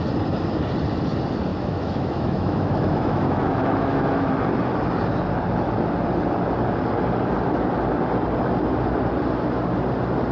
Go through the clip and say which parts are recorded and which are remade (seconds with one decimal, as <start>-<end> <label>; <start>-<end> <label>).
0.0-1.5 recorded; 1.5-4.3 remade; 4.3-10.3 recorded